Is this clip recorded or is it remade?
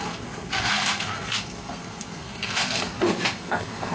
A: remade